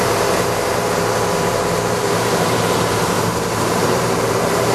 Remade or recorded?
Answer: remade